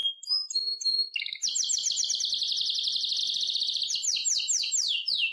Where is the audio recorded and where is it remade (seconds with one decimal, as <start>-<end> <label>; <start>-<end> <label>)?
0.0-5.3 recorded